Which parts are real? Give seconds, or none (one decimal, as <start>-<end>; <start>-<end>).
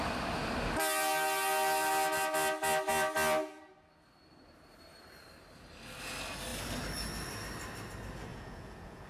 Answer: 0.0-8.3